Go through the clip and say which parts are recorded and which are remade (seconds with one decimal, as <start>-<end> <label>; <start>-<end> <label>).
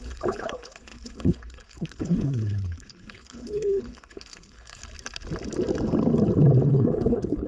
0.0-4.8 remade; 4.8-6.7 recorded; 6.7-7.5 remade